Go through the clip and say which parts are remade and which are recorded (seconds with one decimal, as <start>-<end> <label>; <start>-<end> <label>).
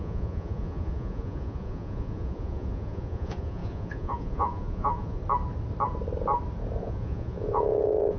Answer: 0.0-5.2 remade; 5.2-6.8 recorded; 6.8-8.2 remade